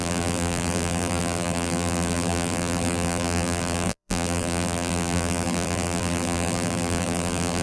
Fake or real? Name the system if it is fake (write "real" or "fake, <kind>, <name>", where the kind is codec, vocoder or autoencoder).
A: fake, vocoder, BigVGAN v2